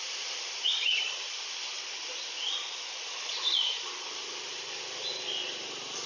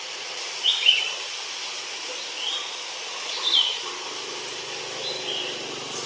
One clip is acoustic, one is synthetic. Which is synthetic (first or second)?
first